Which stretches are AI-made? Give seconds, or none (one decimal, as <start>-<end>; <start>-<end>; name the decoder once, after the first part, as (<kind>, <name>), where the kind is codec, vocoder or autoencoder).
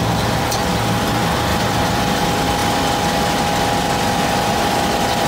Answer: 1.5-2.0 (vocoder, BigVGAN v2)